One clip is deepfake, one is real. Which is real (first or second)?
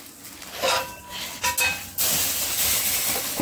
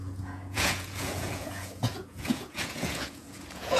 first